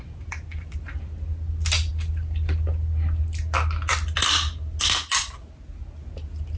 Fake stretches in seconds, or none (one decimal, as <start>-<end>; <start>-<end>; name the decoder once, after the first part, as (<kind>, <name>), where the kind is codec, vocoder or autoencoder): none